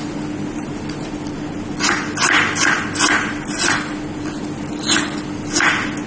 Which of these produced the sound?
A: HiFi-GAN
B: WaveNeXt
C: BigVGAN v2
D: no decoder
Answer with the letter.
D